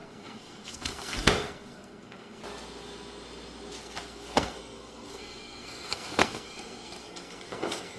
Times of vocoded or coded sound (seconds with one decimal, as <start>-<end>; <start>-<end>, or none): 0.0-2.4; 3.8-8.0